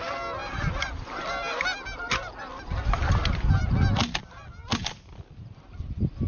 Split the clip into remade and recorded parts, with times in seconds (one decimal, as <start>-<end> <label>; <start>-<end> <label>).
0.0-6.3 recorded